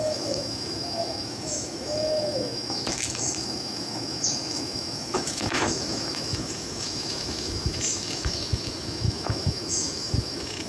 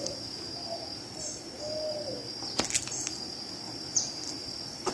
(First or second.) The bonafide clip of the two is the second